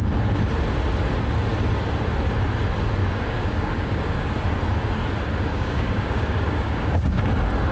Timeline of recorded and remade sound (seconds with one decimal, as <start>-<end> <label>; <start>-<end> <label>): 0.0-3.0 recorded; 3.0-4.3 remade; 4.3-5.5 recorded; 5.5-7.2 remade; 7.2-7.7 recorded